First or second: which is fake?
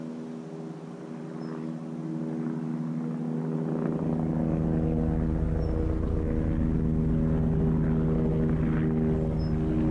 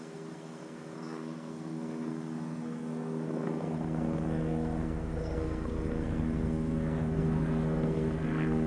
second